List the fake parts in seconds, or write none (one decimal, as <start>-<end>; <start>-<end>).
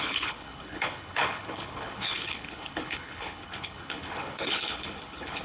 0.0-5.4